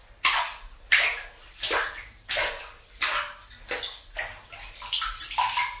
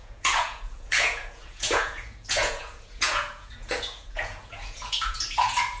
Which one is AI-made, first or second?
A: second